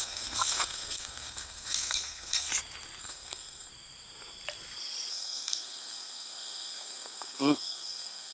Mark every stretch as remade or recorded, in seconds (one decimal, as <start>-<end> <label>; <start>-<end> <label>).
0.0-2.5 remade; 2.5-3.0 recorded; 3.0-3.7 remade; 3.7-5.1 recorded; 5.1-8.3 remade